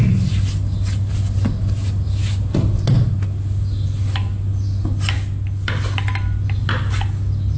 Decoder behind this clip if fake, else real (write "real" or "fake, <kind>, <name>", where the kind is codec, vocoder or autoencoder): real